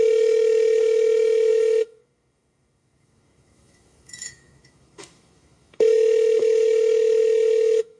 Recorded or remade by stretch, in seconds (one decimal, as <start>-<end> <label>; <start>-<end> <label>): 0.0-8.0 remade